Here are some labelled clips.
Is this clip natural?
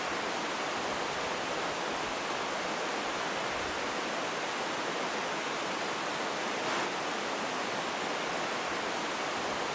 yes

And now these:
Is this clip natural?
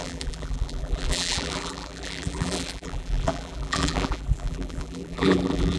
no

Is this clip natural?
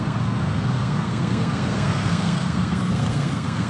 no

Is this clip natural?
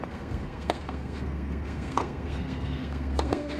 no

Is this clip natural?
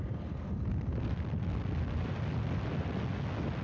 yes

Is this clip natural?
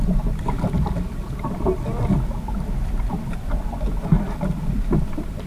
yes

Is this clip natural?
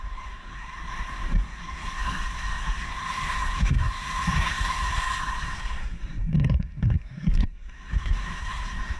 no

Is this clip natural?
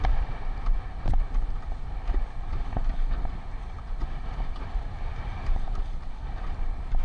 no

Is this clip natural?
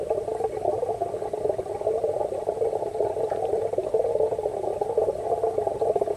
yes